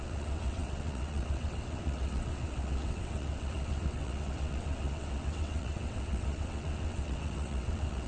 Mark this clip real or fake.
fake